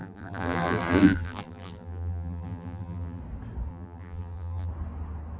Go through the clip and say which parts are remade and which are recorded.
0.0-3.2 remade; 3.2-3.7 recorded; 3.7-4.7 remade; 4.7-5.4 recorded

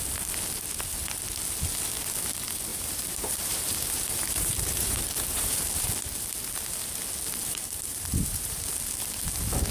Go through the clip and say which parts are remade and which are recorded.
0.0-2.7 recorded; 2.7-5.9 remade; 5.9-7.4 recorded; 7.4-8.6 remade; 8.6-9.7 recorded

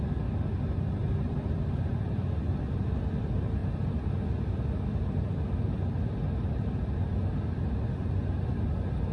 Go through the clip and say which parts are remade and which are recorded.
0.0-1.0 recorded; 1.0-1.9 remade; 1.9-9.1 recorded